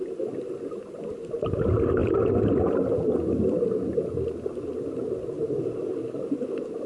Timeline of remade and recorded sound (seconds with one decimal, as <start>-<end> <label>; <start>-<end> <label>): 0.0-6.9 recorded